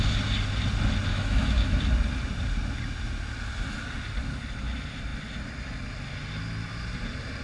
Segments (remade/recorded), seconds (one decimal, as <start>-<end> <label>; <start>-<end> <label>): 0.0-1.1 recorded; 1.1-1.8 remade; 1.8-7.4 recorded